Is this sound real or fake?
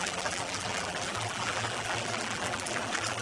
fake